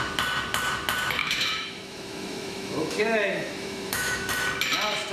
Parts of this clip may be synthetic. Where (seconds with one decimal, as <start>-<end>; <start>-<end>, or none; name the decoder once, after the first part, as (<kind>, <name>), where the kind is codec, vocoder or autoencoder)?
1.2-4.3 (autoencoder, DAC-VAE)

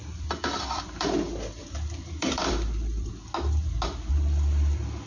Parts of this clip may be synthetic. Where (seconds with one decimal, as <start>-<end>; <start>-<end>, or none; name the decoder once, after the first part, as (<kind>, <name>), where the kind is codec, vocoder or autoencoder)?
0.0-3.1 (vocoder, BigVGAN v2)

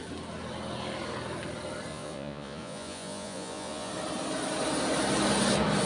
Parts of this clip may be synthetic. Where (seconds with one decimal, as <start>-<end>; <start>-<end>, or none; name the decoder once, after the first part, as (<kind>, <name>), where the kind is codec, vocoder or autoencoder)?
1.9-3.9 (vocoder, Vocos)

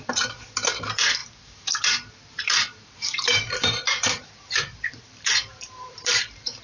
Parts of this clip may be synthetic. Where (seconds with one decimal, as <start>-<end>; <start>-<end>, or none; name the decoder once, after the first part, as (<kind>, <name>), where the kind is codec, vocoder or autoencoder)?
0.0-6.6 (vocoder, BigVGAN v2)

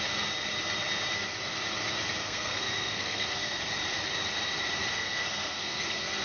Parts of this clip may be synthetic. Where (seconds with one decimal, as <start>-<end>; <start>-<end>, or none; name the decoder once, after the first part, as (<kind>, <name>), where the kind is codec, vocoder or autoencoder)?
2.2-3.6 (codec, SNAC); 4.8-6.2

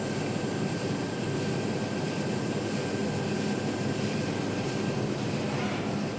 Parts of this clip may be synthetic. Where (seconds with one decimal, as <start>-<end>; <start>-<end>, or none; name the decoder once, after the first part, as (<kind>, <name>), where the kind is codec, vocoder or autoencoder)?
none

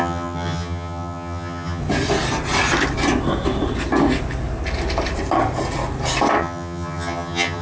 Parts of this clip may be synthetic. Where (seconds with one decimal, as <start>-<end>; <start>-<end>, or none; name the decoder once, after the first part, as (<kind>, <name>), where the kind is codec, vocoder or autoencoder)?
0.0-1.8 (vocoder, HiFi-GAN); 6.4-7.6

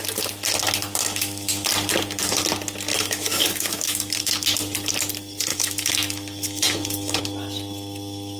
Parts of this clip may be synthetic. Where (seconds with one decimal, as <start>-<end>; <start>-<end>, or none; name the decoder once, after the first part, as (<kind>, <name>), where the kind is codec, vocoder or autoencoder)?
1.0-1.7 (autoencoder, DAC-VAE); 2.9-4.3; 5.5-7.2